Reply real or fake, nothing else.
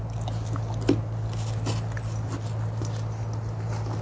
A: real